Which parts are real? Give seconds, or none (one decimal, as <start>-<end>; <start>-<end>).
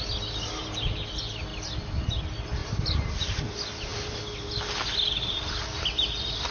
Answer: 0.0-2.6; 3.1-6.5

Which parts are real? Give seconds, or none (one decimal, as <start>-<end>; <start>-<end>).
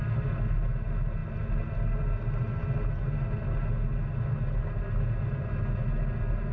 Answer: 0.0-6.5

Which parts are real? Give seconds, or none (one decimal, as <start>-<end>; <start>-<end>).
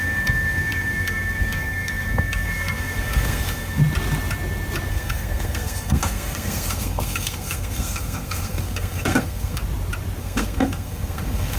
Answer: 3.8-4.9; 9.6-10.2